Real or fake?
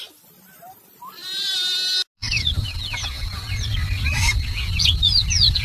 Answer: real